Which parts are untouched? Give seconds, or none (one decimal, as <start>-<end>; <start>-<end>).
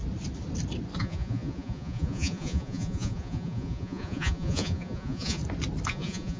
0.0-1.0; 5.4-5.9